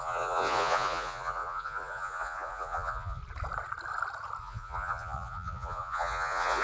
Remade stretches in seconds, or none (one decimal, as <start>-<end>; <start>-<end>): 0.0-3.2; 4.4-6.6